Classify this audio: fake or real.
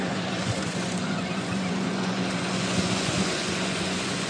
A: fake